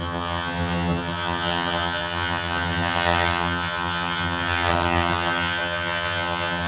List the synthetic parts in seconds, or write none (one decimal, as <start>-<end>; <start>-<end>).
0.0-6.7